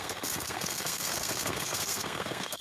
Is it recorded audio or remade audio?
remade